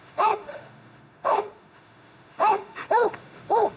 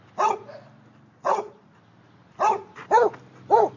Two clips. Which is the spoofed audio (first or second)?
first